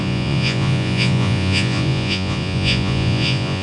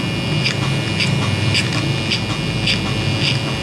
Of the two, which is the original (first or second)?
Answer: second